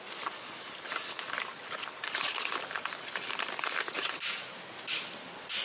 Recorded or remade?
recorded